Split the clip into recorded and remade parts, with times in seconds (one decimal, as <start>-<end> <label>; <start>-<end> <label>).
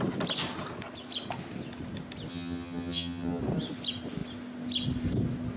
0.0-2.3 recorded; 2.3-3.4 remade; 3.4-5.6 recorded